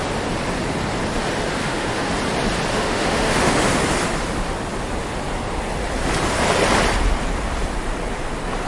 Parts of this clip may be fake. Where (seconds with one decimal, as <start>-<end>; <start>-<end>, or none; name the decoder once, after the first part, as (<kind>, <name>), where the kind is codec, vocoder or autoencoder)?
1.6-2.1 (autoencoder, DAC-VAE); 2.7-3.5

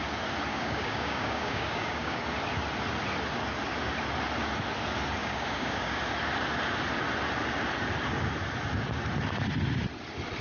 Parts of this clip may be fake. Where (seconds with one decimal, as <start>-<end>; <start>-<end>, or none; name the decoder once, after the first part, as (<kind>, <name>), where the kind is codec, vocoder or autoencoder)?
0.5-2.2 (codec, DAC); 5.2-6.0

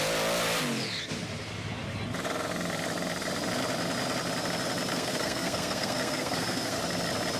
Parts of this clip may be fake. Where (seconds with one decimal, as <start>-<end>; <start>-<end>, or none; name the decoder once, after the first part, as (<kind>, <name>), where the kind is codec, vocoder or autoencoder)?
4.9-6.8 (codec, SNAC)

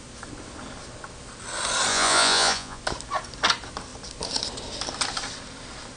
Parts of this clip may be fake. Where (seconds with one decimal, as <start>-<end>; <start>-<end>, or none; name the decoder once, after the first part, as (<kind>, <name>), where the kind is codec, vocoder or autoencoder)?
1.9-2.8 (vocoder, Vocos)

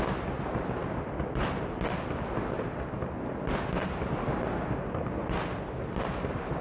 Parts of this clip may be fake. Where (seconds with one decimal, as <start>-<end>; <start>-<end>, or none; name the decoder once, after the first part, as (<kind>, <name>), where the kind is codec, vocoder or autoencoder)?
0.8-1.8 (vocoder, BigVGAN v2)

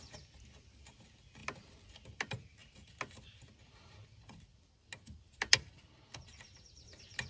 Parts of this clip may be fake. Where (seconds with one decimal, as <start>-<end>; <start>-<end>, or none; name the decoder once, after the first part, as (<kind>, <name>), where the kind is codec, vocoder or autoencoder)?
none

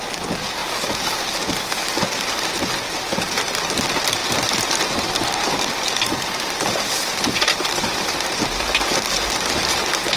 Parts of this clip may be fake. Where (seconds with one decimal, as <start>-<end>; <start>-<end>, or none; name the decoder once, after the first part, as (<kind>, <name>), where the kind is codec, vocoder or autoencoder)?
4.2-8.4 (vocoder, BigVGAN v2)

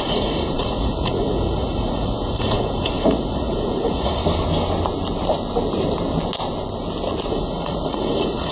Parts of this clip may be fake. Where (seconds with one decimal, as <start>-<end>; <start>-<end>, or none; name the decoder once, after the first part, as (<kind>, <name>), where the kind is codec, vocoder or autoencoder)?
0.0-4.2 (vocoder, Vocos); 7.3-8.5